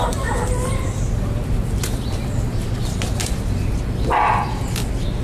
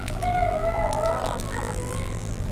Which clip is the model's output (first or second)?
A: second